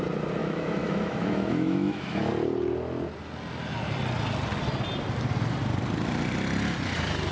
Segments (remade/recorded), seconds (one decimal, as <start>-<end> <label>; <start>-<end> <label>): 0.0-0.4 recorded; 0.4-2.3 remade; 2.3-7.3 recorded